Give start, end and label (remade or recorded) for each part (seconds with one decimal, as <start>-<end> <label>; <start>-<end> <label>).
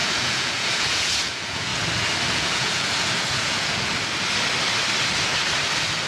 0.0-1.7 remade; 1.7-2.3 recorded; 2.3-3.9 remade; 3.9-6.1 recorded